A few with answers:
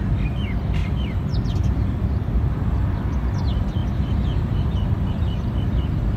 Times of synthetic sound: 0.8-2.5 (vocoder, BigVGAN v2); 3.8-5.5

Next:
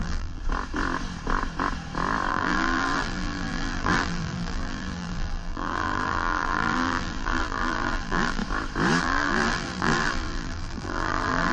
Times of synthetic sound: 0.0-0.4 (vocoder, BigVGAN v2); 2.3-8.4; 9.0-11.5